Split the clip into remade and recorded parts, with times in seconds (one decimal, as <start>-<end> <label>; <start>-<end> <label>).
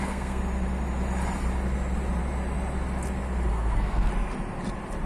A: 0.0-0.4 remade; 0.4-3.5 recorded; 3.5-4.1 remade; 4.1-5.1 recorded